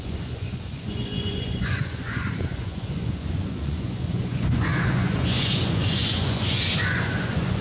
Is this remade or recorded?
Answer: remade